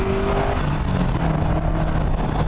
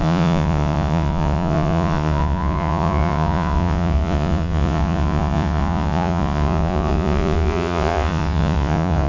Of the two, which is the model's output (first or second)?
second